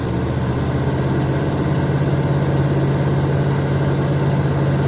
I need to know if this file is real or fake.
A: real